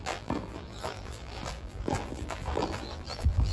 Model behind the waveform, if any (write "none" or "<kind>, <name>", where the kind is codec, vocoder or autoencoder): vocoder, BigVGAN v2